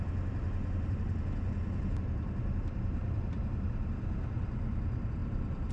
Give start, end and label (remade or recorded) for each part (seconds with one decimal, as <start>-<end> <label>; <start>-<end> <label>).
0.0-0.6 recorded; 0.6-1.2 remade; 1.2-3.0 recorded; 3.0-3.7 remade; 3.7-5.7 recorded